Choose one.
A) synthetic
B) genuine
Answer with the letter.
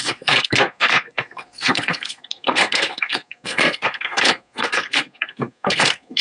A